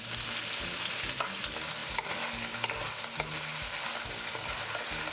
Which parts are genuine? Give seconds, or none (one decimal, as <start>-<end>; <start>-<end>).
0.0-5.1